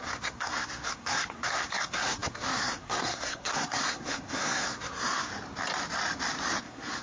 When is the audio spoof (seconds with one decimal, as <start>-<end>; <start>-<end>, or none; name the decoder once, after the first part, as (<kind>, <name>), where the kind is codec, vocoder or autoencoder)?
0.0-5.3 (codec, SNAC); 6.6-7.0